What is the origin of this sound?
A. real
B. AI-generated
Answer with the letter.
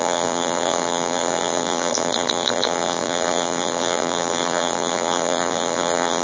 B